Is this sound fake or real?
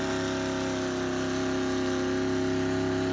real